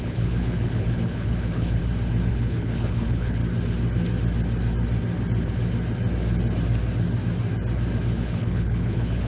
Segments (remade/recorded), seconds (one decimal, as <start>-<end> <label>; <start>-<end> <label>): 0.0-1.8 remade; 1.8-2.3 recorded; 2.3-3.4 remade; 3.4-8.2 recorded; 8.2-9.3 remade